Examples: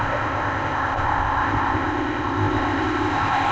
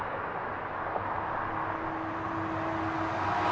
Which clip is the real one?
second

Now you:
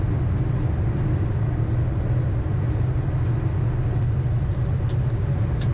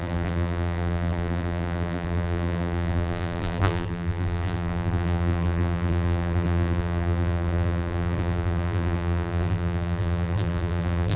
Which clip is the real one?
first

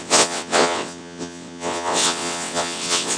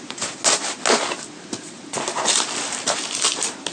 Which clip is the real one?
second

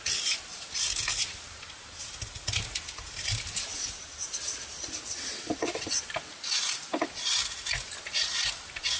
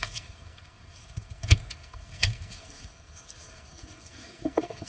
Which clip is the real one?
first